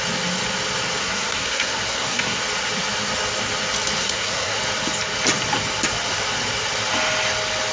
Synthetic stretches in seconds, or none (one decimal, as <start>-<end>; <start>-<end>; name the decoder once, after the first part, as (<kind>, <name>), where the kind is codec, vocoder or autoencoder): 1.0-2.4 (codec, SNAC); 4.0-4.6